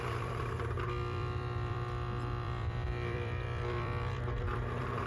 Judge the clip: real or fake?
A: fake